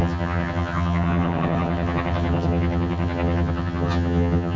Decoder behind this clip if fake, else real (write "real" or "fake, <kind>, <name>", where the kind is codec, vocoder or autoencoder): fake, vocoder, HiFi-GAN